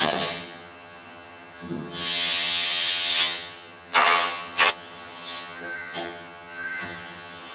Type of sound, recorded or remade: remade